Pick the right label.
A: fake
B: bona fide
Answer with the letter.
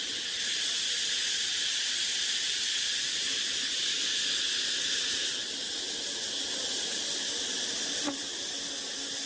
B